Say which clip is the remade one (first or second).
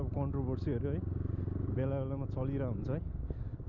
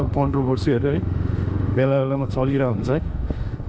second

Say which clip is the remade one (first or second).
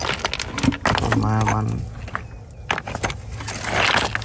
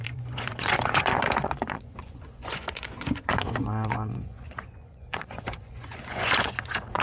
second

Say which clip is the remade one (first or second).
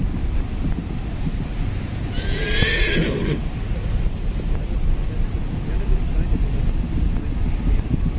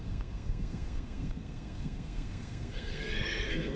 second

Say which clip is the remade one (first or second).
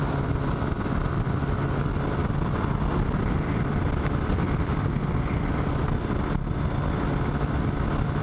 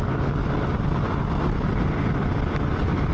second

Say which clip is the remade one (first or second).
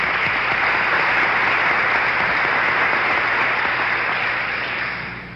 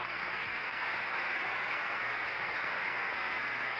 second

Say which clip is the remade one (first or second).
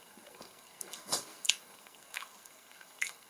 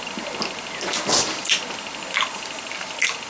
first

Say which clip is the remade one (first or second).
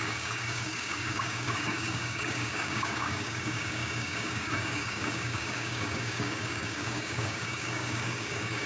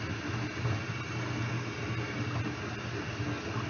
first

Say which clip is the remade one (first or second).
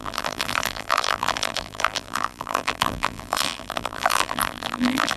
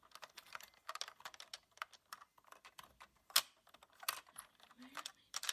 first